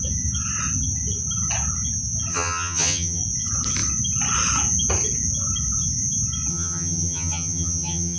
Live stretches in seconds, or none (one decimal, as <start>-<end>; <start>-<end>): 0.0-2.3; 3.2-6.5